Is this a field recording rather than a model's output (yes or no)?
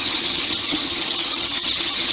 no